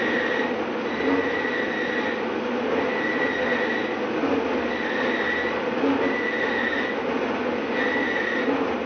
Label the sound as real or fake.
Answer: real